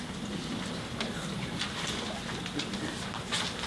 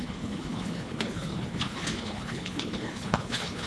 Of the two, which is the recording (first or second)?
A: first